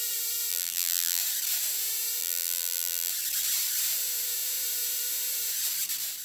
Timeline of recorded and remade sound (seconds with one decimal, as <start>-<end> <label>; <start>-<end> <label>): 0.0-0.5 recorded; 0.5-1.2 remade; 1.2-2.2 recorded; 2.2-3.1 remade; 3.1-6.2 recorded